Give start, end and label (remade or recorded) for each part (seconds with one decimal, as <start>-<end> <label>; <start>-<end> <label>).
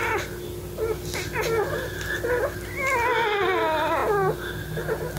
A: 0.0-5.2 recorded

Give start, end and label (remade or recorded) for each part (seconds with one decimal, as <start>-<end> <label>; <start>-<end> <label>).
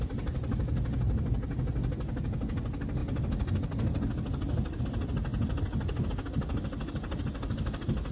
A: 0.0-8.1 recorded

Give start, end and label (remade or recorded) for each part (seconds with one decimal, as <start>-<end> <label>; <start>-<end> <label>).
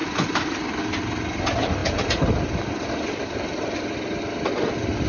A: 0.0-0.8 remade; 0.8-1.8 recorded; 1.8-4.2 remade; 4.2-5.1 recorded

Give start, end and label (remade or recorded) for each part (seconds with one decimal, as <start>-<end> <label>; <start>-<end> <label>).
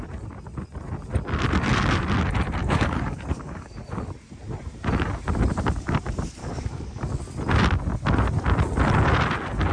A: 0.0-2.6 recorded; 2.6-3.8 remade; 3.8-6.4 recorded; 6.4-7.2 remade; 7.2-9.7 recorded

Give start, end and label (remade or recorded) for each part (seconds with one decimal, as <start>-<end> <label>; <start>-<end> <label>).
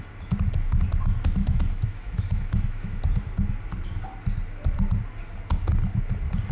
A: 0.0-1.4 recorded; 1.4-3.0 remade; 3.0-6.5 recorded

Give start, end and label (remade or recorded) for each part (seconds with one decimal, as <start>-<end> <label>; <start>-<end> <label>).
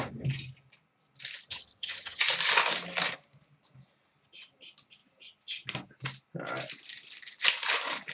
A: 0.0-1.5 recorded; 1.5-2.2 remade; 2.2-8.1 recorded